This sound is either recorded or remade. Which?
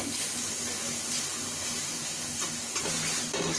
recorded